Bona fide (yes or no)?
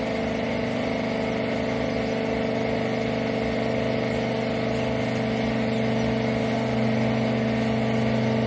yes